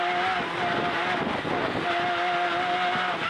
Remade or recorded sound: recorded